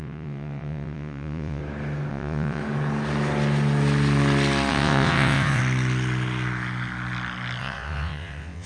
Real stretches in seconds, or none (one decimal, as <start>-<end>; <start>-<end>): 1.6-2.1; 2.6-4.7; 5.6-7.6